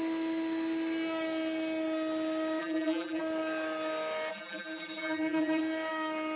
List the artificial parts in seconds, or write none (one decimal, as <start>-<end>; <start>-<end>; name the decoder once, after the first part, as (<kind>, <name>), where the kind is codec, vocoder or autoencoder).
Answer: 2.6-3.2 (vocoder, BigVGAN v2); 4.3-5.6